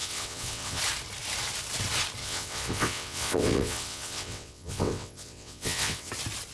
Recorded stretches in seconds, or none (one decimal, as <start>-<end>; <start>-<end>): 0.8-2.2; 6.1-6.5